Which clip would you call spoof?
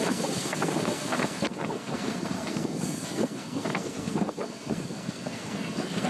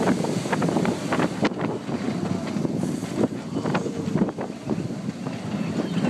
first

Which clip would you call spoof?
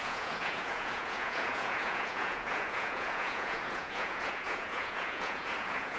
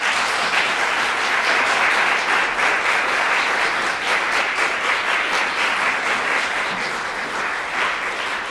first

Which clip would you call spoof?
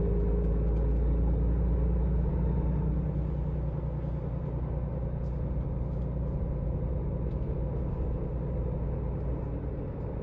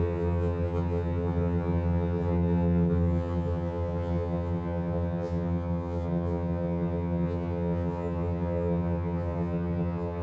second